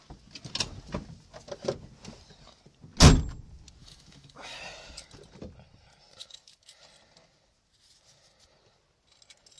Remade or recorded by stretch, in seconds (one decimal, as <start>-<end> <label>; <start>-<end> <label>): 0.0-3.8 recorded; 3.8-4.6 remade; 4.6-6.2 recorded; 6.2-6.8 remade; 6.8-9.6 recorded